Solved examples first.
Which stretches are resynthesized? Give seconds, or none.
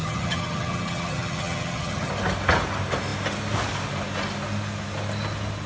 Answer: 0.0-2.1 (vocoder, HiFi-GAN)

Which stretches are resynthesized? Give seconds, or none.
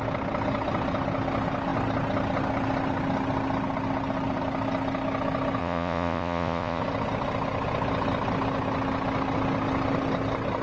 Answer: 5.6-6.8 (vocoder, Vocos)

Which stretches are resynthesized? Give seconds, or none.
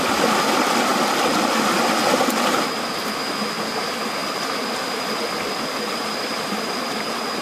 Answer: none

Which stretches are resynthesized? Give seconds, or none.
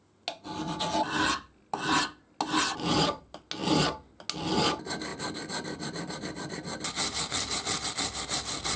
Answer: none